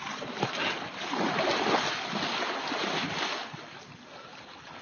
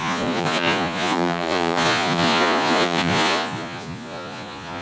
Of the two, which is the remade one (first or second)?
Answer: second